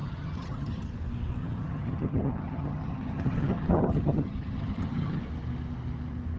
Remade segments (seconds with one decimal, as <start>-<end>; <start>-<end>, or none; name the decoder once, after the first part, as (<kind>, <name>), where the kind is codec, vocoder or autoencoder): 0.0-0.9 (vocoder, HiFi-GAN); 1.4-5.2